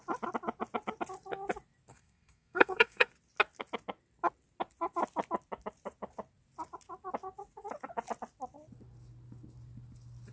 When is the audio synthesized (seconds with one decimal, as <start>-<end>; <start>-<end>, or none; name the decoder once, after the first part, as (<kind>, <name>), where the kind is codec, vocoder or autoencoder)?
1.9-3.1 (codec, SNAC)